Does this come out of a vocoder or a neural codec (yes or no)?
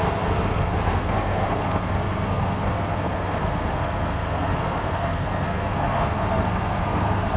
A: yes